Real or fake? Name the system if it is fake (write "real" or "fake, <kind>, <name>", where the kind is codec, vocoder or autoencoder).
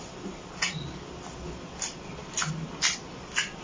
real